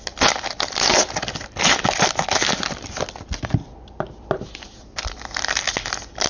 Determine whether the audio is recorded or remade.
recorded